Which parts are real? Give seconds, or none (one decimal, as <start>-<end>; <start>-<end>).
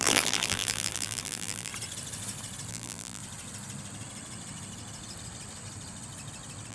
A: 1.7-2.7; 3.2-6.7